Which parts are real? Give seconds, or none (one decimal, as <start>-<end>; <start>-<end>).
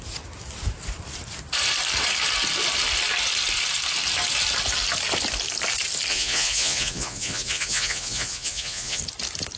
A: 0.0-6.1; 9.0-9.6